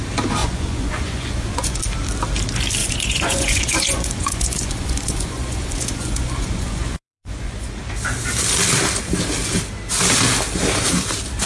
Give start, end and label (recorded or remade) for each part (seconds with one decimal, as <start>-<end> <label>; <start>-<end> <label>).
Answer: 0.0-0.4 recorded; 0.4-1.8 remade; 1.8-2.8 recorded; 2.8-7.7 remade; 7.7-11.5 recorded